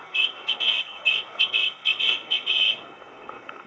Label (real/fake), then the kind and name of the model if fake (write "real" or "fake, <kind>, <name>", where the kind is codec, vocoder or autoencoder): fake, codec, SNAC